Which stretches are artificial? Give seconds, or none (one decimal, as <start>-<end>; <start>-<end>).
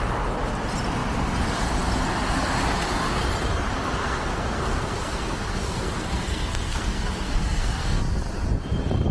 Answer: 4.0-8.0